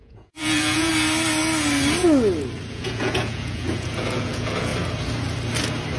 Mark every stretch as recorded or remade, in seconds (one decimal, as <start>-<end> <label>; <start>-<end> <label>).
0.0-0.9 remade; 0.9-2.7 recorded; 2.7-4.7 remade; 4.7-6.0 recorded